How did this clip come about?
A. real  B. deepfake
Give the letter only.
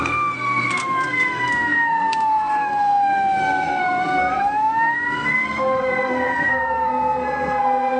B